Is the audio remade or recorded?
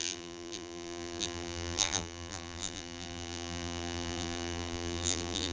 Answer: remade